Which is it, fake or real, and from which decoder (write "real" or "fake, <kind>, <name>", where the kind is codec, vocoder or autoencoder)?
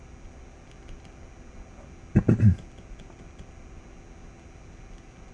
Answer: real